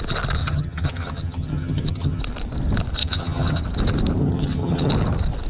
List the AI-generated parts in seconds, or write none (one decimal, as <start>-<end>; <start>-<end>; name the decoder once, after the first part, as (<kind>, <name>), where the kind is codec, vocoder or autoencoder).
0.4-2.2 (vocoder, HiFi-GAN); 3.0-3.6; 4.2-4.9